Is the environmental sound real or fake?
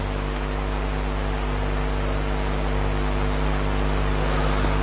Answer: real